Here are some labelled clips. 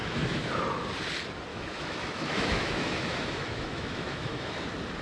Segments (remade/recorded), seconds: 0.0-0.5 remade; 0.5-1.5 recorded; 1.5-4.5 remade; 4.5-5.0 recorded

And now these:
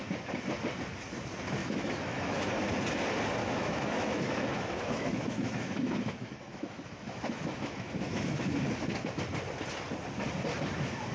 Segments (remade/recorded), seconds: 0.0-1.6 recorded; 1.6-2.5 remade; 2.5-3.4 recorded; 3.4-8.6 remade; 8.6-11.1 recorded

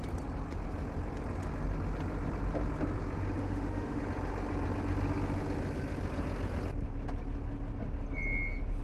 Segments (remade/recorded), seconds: 0.0-3.4 recorded; 3.4-4.0 remade; 4.0-8.8 recorded

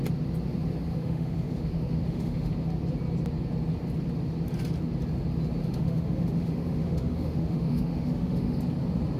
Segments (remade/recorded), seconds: 0.0-0.9 recorded; 0.9-2.5 remade; 2.5-5.6 recorded; 5.6-8.6 remade; 8.6-9.2 recorded

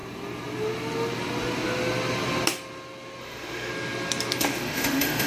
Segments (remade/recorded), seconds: 0.0-3.2 recorded; 3.2-3.7 remade; 3.7-4.4 recorded; 4.4-5.3 remade

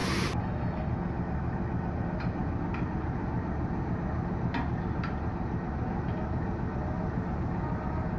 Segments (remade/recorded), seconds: 0.0-8.2 recorded